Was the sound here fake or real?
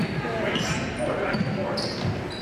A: real